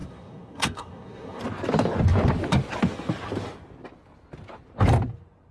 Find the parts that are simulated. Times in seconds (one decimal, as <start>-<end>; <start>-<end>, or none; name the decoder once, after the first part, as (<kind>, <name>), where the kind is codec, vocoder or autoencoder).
0.0-1.4 (codec, SNAC)